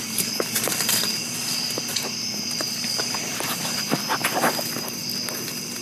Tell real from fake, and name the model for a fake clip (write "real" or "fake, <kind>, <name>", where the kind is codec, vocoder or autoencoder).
real